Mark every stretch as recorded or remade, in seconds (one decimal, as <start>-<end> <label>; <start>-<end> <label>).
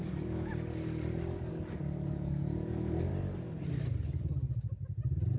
0.0-0.5 remade; 0.5-1.5 recorded; 1.5-3.1 remade; 3.1-5.4 recorded